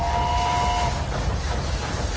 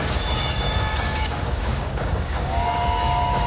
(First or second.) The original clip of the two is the first